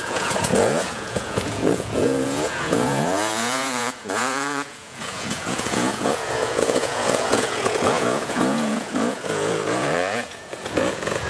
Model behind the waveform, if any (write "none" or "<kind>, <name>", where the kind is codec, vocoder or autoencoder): vocoder, Vocos